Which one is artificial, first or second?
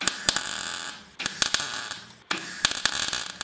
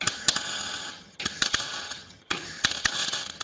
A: second